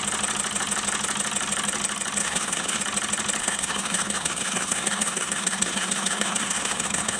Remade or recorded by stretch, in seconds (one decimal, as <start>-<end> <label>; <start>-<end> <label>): 0.0-2.2 recorded; 2.2-2.8 remade; 2.8-3.4 recorded; 3.4-7.2 remade